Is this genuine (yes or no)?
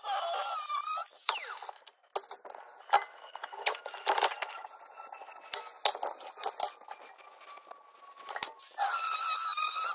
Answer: yes